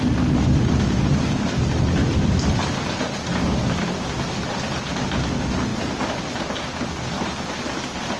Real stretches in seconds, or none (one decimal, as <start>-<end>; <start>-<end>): 0.0-2.0; 4.0-5.7; 6.2-8.2